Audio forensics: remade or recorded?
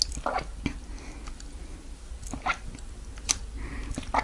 recorded